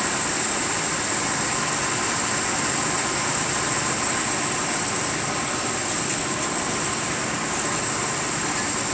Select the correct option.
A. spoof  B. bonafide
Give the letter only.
B